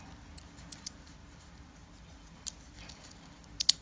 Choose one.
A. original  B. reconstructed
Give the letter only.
A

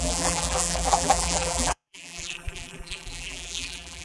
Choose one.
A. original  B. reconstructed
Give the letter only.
B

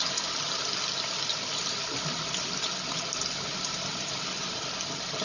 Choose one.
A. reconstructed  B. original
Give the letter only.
B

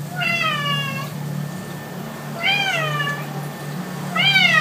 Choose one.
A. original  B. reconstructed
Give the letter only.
A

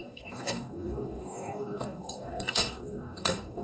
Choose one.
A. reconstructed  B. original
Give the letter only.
A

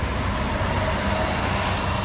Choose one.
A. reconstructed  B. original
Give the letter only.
B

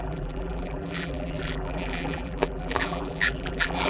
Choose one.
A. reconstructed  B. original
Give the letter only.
A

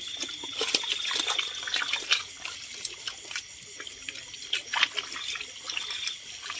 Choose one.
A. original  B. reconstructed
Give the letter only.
A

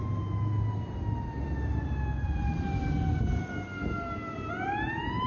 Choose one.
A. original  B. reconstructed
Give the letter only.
A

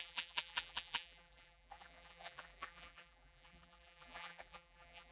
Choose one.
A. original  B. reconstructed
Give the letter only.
B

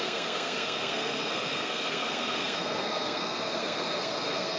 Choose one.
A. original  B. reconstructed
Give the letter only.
B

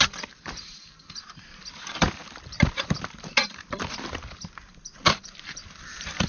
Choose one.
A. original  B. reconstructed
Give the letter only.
B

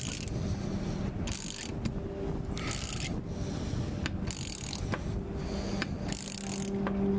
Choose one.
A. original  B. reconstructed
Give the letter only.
A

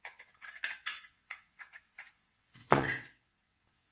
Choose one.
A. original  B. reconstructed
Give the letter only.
B